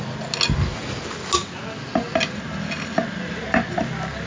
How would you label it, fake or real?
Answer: real